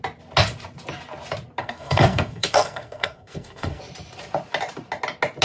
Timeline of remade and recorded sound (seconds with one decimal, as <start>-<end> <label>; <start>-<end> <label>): 0.0-1.6 recorded; 1.6-3.8 remade; 3.8-5.4 recorded